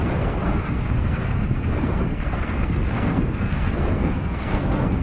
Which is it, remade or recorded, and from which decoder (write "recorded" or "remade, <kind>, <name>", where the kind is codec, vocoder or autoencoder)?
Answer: remade, codec, SNAC